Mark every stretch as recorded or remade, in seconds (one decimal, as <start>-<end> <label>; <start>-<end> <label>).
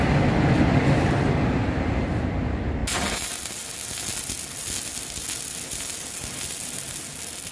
0.0-7.5 recorded